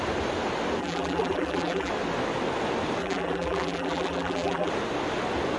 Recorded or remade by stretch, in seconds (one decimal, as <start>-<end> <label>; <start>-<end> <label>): 0.0-0.8 recorded; 0.8-1.9 remade; 1.9-3.0 recorded; 3.0-4.7 remade; 4.7-5.6 recorded